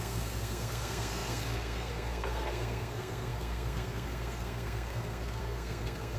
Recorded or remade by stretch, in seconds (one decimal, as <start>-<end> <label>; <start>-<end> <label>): 0.0-6.2 remade